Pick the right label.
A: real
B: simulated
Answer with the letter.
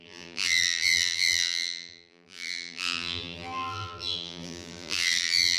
B